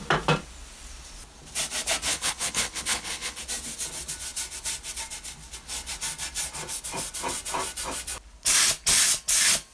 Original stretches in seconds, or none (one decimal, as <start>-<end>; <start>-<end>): 0.0-2.1; 3.4-9.7